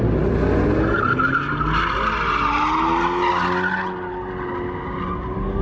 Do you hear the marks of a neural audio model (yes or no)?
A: no